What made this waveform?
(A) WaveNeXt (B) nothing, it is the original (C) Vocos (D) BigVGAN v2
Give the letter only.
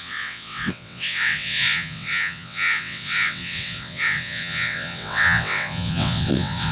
A